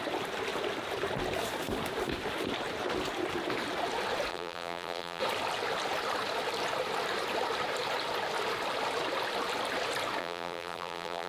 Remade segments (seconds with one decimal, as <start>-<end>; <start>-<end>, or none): 4.3-5.2; 10.2-11.3

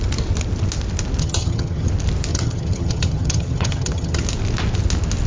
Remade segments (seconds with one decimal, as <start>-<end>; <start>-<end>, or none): 1.2-1.9; 2.3-4.2

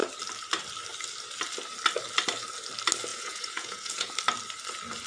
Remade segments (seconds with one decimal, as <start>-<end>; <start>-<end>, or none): 3.1-4.1

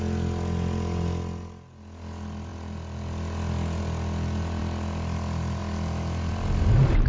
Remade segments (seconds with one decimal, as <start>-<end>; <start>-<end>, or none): none